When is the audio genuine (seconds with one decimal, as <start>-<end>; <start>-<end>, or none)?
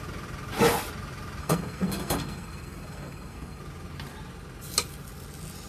0.0-1.4; 3.6-5.7